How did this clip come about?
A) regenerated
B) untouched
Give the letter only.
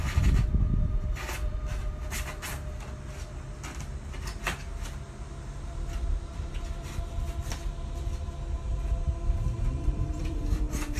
B